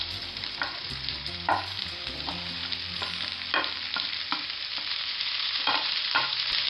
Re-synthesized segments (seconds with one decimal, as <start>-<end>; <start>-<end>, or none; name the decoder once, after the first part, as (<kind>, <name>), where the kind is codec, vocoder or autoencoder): 0.0-2.6 (vocoder, BigVGAN v2); 4.9-6.7